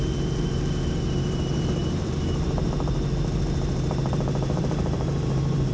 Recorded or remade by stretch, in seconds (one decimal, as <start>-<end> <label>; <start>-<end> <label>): 0.0-5.7 remade